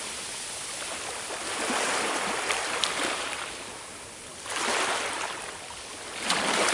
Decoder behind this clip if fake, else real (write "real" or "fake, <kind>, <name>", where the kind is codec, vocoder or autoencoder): real